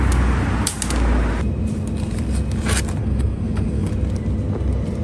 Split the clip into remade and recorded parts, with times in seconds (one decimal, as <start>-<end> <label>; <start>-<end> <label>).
0.0-3.0 recorded; 3.0-3.9 remade; 3.9-5.0 recorded